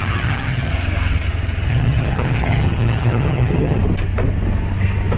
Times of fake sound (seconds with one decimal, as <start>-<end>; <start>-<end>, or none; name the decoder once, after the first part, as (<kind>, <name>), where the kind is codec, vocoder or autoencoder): 0.0-0.7 (vocoder, HiFi-GAN); 1.7-3.8